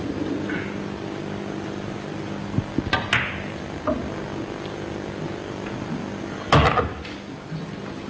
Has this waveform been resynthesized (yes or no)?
no